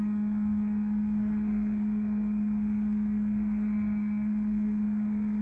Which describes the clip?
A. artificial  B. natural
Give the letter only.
A